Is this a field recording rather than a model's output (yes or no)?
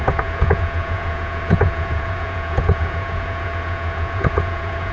no